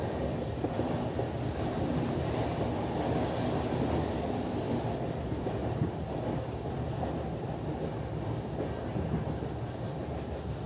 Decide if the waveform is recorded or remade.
recorded